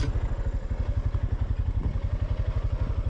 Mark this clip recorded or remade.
recorded